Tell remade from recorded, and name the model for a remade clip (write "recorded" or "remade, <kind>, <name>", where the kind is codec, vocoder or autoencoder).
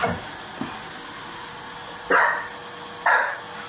recorded